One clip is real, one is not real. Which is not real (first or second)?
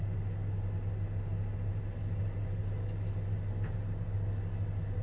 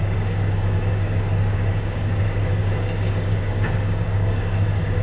second